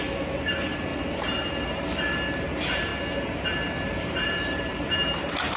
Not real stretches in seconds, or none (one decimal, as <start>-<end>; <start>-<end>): 0.0-0.9; 2.4-2.9; 4.1-5.6